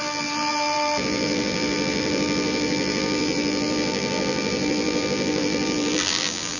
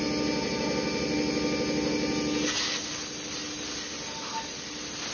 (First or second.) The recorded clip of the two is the second